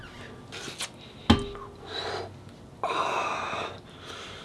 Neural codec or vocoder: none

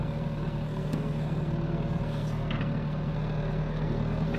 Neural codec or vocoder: codec, SNAC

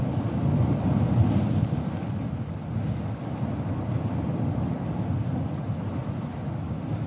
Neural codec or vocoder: none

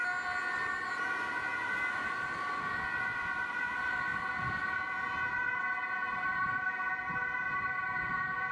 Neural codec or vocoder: none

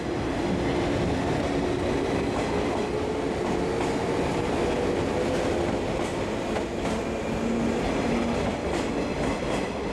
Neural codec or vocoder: none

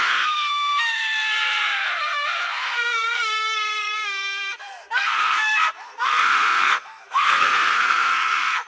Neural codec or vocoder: codec, SNAC